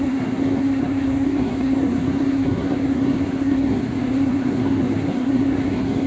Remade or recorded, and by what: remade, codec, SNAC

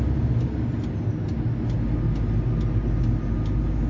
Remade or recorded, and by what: recorded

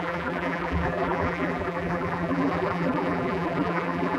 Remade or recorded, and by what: remade, vocoder, BigVGAN v2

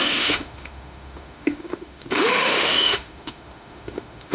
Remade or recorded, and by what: remade, autoencoder, DAC-VAE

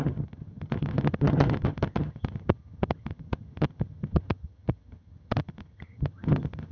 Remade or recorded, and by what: remade, vocoder, HiFi-GAN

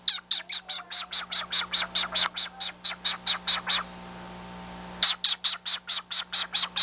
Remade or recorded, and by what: recorded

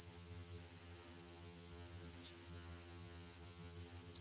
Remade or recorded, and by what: remade, vocoder, HiFi-GAN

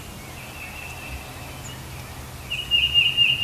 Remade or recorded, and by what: recorded